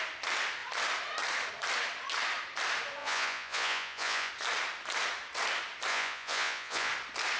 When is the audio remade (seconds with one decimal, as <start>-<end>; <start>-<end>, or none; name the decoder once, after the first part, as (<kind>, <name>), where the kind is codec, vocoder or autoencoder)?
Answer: 3.0-4.3 (vocoder, Vocos); 5.9-6.9